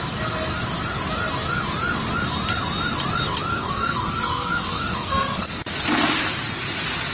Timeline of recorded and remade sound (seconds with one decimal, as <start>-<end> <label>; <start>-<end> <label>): 0.0-3.5 recorded; 3.5-5.6 remade; 5.6-7.1 recorded